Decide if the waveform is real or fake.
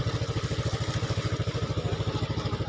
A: real